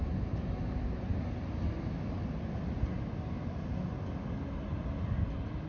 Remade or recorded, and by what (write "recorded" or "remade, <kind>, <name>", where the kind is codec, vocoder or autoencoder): recorded